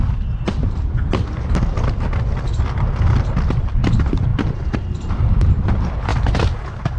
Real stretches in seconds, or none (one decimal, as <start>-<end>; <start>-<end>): 0.0-7.0